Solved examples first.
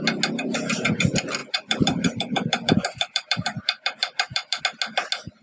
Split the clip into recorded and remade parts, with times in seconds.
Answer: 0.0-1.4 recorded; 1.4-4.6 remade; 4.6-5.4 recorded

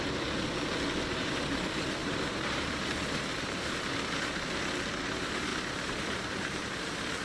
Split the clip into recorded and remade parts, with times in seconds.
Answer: 0.0-2.0 recorded; 2.0-3.9 remade; 3.9-5.5 recorded; 5.5-6.8 remade; 6.8-7.2 recorded